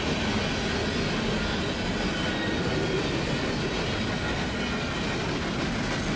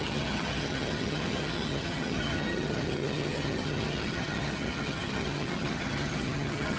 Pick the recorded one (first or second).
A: first